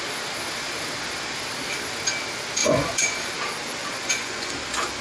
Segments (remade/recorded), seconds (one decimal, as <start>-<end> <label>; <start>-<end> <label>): 0.0-2.6 recorded; 2.6-3.3 remade; 3.3-3.8 recorded; 3.8-4.5 remade; 4.5-5.0 recorded